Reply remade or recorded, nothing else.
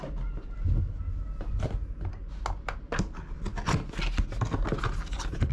recorded